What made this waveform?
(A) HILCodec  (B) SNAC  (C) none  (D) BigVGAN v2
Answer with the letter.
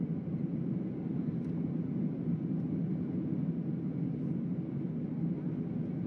C